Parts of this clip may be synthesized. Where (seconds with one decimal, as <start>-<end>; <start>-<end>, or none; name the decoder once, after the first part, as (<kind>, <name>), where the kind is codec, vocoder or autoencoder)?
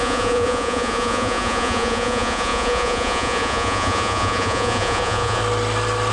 0.0-5.4 (vocoder, Vocos)